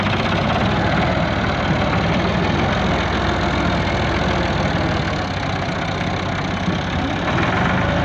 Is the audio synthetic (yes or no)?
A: no